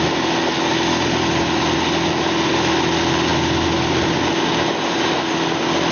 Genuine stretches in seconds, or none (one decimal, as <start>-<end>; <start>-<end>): 0.0-5.9